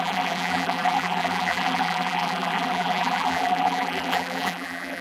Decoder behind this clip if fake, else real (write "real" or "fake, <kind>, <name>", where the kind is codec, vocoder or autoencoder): fake, vocoder, BigVGAN v2